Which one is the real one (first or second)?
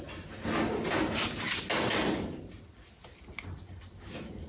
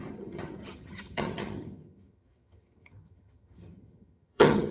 first